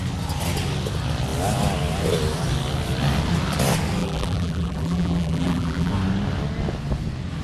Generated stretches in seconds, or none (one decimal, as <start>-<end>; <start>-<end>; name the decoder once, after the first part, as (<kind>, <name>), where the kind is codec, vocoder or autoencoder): 4.0-5.9 (vocoder, BigVGAN v2)